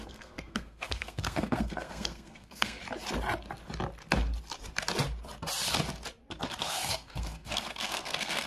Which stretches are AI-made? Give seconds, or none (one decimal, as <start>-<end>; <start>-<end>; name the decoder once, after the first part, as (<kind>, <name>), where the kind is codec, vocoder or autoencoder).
0.0-2.8 (codec, SNAC); 6.6-8.5